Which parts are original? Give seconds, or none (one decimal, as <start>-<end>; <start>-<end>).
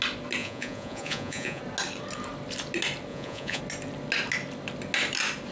0.0-0.4; 1.6-3.1; 3.6-5.5